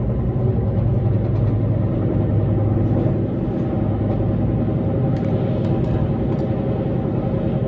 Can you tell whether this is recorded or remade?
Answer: recorded